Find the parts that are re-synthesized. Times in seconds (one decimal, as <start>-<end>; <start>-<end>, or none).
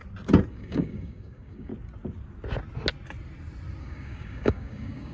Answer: 0.5-1.7; 3.8-5.1